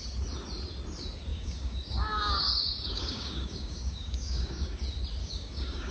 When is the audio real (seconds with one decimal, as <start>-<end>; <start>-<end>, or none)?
0.0-1.3; 4.8-5.2